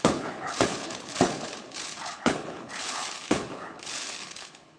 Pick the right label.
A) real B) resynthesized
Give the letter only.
B